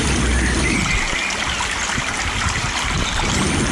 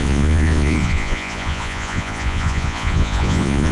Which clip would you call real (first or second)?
first